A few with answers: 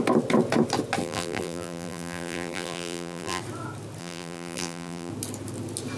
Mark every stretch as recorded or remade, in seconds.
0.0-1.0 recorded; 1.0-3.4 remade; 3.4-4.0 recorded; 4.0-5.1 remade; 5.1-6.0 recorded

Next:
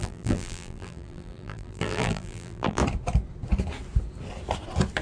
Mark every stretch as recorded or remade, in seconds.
0.0-2.8 remade; 2.8-5.0 recorded

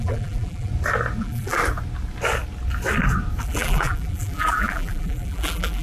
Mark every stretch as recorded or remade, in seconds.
0.0-0.7 remade; 0.7-1.2 recorded; 1.2-1.6 remade; 1.6-3.4 recorded; 3.4-5.8 remade

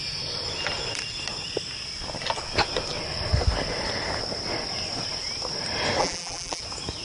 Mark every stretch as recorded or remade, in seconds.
0.0-6.0 recorded; 6.0-6.6 remade; 6.6-7.0 recorded

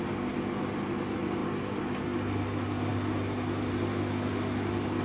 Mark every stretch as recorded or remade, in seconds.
0.0-5.0 recorded

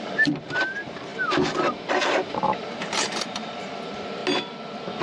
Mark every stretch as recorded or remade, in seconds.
0.0-4.2 remade; 4.2-5.0 recorded